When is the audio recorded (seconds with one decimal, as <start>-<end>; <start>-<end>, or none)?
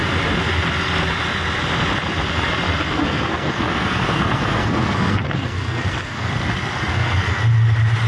0.0-3.0; 6.3-6.9; 7.4-8.1